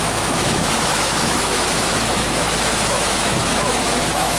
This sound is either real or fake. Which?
fake